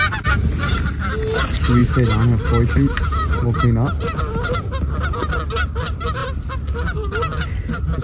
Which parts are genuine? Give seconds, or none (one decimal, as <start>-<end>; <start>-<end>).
0.0-8.0